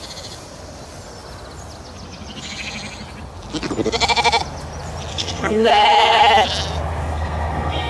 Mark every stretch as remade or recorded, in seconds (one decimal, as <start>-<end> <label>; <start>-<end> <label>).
0.0-5.1 recorded; 5.1-6.2 remade; 6.2-7.0 recorded; 7.0-7.9 remade